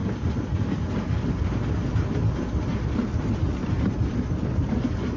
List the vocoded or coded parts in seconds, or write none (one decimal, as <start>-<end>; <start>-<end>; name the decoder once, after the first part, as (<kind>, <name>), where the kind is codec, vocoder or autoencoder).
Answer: none